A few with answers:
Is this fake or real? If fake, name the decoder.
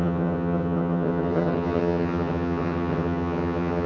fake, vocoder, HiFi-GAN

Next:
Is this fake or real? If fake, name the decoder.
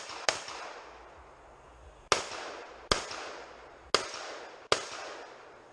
real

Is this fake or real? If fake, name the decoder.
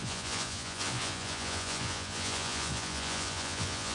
fake, vocoder, Vocos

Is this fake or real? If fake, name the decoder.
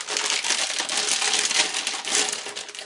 real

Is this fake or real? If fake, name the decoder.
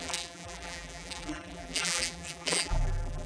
fake, vocoder, BigVGAN v2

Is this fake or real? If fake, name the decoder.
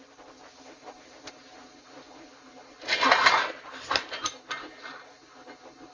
real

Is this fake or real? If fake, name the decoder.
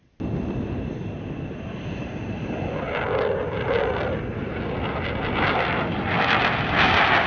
real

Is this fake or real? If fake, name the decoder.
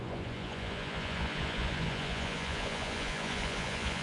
fake, vocoder, Vocos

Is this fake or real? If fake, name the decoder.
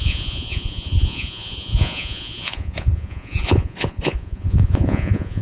fake, vocoder, Vocos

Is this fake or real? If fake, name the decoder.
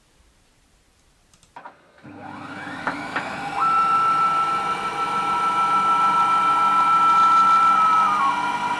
real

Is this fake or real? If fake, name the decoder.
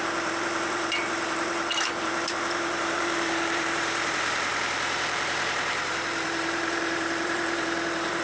fake, vocoder, BigVGAN v2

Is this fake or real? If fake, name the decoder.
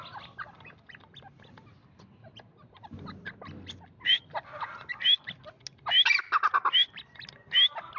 real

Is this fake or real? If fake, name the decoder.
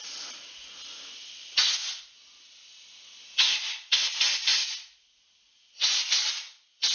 real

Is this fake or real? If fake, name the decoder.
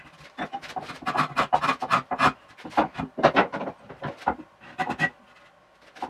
fake, vocoder, BigVGAN v2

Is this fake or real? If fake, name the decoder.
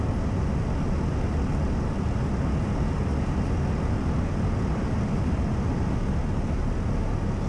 real